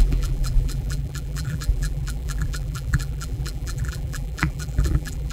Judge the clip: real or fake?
fake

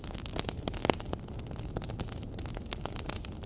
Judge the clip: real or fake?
real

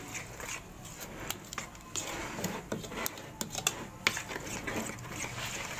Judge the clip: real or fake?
real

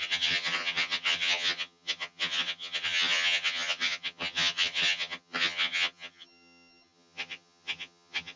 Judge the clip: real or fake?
fake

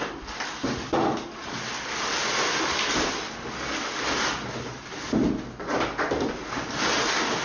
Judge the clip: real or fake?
real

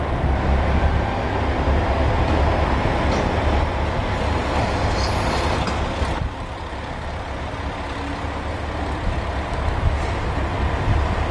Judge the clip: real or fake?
real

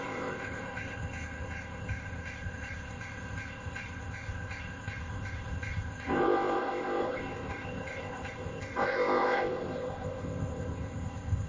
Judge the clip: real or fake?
fake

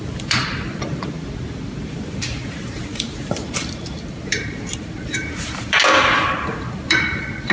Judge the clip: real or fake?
fake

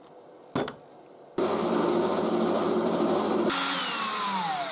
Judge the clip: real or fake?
real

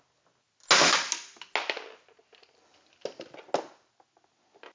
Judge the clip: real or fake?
real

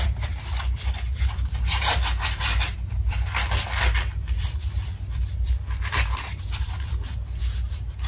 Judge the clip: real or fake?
fake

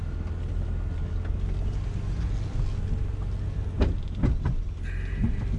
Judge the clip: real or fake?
real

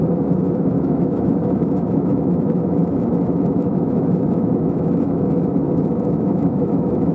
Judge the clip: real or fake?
fake